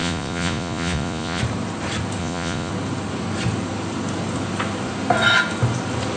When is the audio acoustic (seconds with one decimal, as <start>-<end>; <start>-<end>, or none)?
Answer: 1.4-2.2; 2.7-6.2